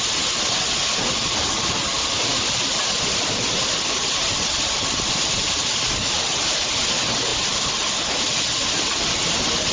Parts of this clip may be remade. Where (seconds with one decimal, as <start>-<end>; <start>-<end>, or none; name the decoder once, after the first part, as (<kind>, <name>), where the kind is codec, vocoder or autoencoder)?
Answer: 2.3-6.8 (vocoder, BigVGAN v2); 7.3-9.7